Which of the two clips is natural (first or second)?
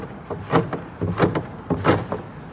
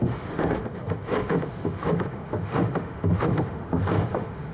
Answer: first